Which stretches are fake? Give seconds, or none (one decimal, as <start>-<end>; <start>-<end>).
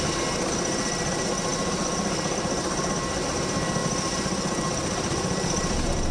1.5-2.9; 3.8-6.1